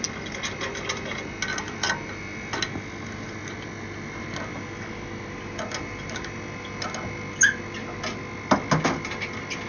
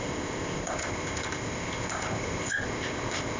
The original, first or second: first